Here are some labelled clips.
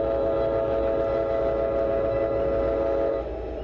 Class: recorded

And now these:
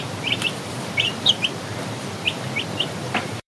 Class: remade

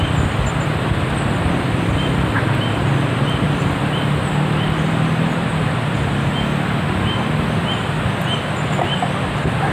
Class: recorded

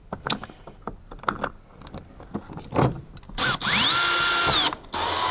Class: recorded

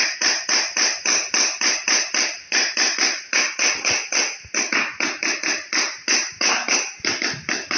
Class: recorded